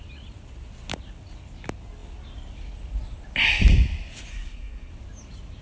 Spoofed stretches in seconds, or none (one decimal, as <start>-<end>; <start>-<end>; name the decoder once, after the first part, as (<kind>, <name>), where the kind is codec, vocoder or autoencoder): 4.3-4.9 (codec, SNAC)